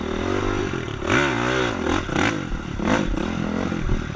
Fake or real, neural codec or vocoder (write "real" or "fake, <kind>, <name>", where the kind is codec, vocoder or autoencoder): real